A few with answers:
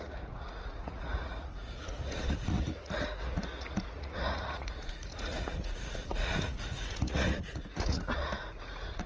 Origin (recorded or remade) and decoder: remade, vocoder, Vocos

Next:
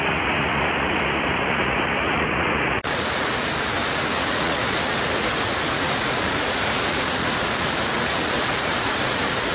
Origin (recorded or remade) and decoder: remade, vocoder, Vocos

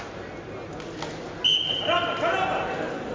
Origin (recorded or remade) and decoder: recorded